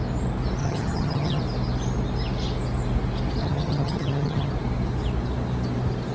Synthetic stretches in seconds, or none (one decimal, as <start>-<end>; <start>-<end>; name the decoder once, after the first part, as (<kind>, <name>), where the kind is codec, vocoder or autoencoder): 0.6-1.4 (vocoder, HiFi-GAN); 3.4-4.5

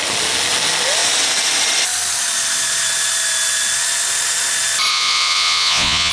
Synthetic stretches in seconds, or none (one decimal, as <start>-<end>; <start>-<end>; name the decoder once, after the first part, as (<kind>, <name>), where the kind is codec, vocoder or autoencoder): 4.9-6.1 (vocoder, Vocos)

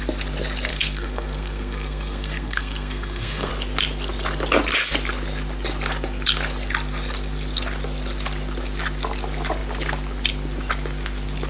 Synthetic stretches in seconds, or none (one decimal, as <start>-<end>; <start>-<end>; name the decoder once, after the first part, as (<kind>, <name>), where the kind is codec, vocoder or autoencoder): 0.7-3.5 (codec, SNAC)

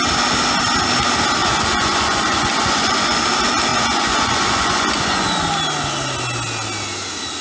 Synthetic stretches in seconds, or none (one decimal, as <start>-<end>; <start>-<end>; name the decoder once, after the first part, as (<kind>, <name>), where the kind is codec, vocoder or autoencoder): 1.4-3.2 (vocoder, Vocos); 3.7-5.5